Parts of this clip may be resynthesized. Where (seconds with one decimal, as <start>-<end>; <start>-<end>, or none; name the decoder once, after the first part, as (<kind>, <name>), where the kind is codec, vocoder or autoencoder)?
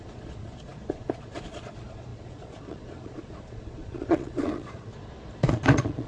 0.0-6.1 (vocoder, Vocos)